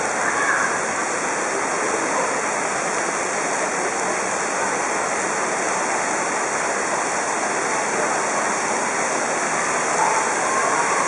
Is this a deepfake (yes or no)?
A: no